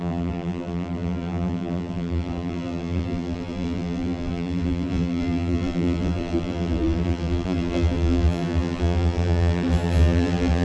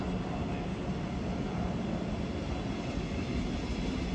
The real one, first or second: second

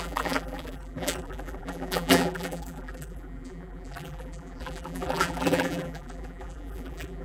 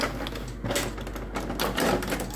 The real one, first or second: second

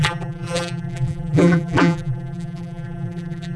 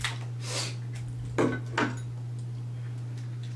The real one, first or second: second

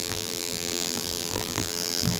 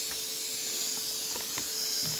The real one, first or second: second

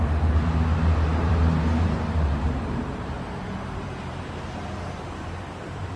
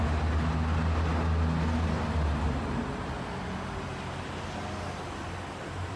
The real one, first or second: second